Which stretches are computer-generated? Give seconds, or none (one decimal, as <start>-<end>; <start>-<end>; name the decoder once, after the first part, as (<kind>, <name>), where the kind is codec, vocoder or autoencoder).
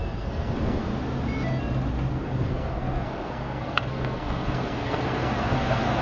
0.0-0.9 (codec, SNAC); 2.1-6.0